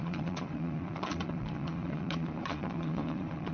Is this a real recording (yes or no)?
no